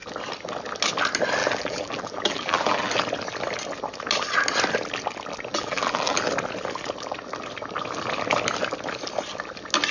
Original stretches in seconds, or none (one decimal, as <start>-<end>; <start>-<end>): 0.0-1.4; 2.9-5.5; 6.2-9.9